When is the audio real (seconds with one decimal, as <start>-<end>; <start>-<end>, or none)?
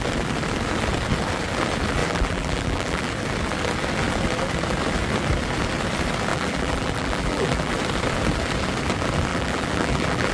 0.0-2.0; 3.1-6.3; 7.7-9.3